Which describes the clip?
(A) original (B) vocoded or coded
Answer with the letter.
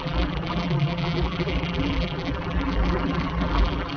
B